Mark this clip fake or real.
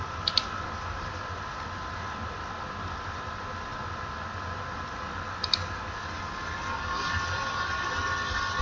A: real